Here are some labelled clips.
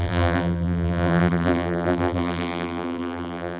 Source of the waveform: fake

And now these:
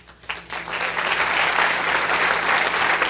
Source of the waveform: real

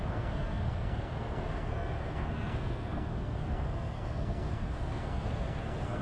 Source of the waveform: fake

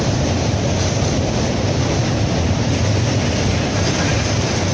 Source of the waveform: real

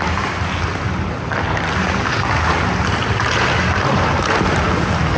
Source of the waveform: real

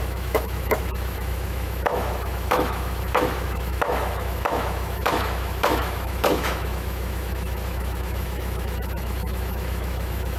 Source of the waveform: fake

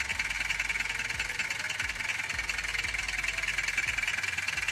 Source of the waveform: real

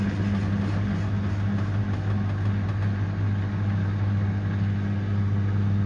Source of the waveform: real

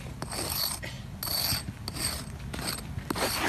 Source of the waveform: real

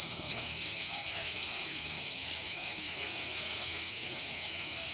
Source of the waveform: fake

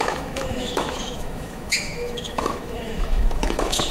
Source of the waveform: fake